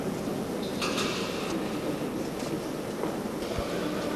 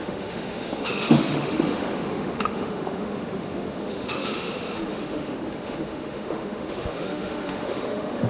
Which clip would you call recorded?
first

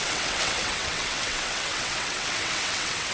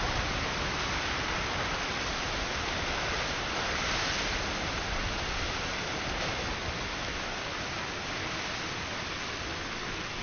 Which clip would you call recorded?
second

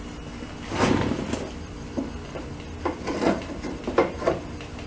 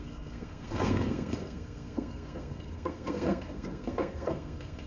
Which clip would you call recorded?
first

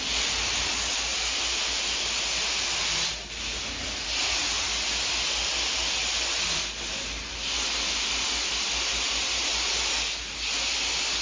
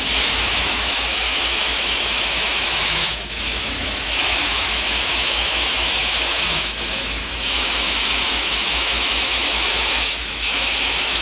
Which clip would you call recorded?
first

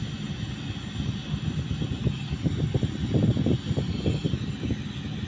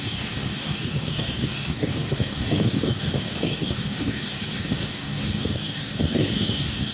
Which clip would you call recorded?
first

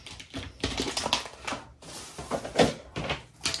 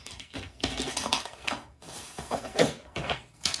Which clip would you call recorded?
first